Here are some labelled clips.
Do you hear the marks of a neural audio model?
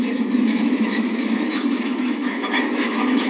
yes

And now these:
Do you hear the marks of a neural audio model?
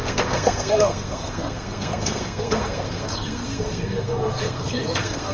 yes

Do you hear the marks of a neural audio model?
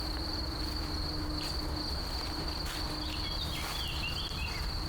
no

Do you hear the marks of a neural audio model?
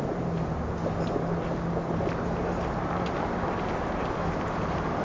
no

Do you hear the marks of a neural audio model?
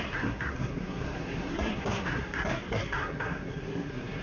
yes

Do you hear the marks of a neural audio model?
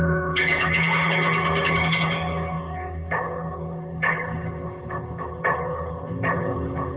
yes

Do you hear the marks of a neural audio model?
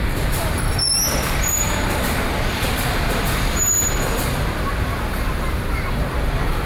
yes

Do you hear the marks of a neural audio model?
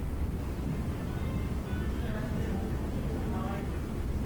no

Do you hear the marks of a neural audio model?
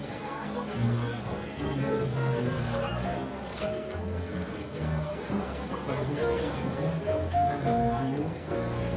yes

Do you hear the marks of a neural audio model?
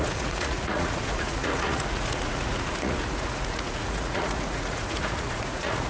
yes